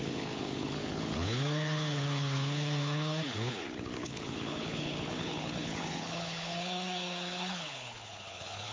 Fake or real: fake